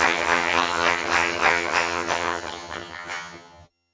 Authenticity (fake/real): fake